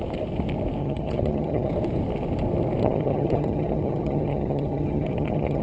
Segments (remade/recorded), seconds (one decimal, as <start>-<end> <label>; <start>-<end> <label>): 0.0-0.8 recorded; 0.8-1.7 remade; 1.7-2.8 recorded; 2.8-5.6 remade